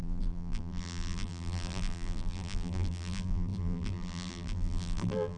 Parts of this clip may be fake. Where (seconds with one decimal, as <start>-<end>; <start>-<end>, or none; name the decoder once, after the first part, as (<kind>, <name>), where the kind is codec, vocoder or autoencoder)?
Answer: 0.0-5.4 (vocoder, BigVGAN v2)